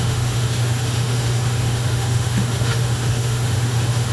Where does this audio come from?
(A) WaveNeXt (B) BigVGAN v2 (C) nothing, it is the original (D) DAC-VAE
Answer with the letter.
D